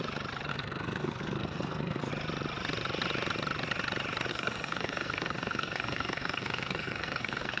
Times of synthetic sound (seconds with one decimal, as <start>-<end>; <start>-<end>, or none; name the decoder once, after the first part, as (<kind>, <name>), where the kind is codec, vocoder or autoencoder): 0.5-2.1 (codec, SNAC); 4.3-7.6